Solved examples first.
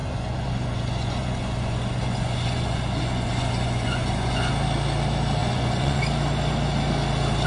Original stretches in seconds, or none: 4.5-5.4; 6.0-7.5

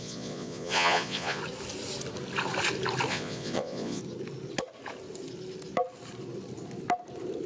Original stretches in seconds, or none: 1.4-3.1; 4.0-7.5

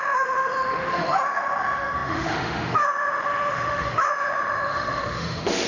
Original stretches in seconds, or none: none

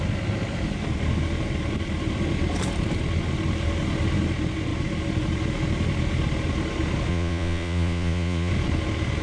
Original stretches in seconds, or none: 0.0-7.1; 8.5-9.2